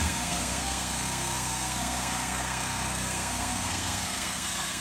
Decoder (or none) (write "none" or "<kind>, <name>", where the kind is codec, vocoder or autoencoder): codec, SNAC